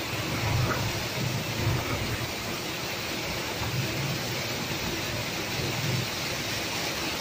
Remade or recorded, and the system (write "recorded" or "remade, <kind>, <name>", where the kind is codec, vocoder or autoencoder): recorded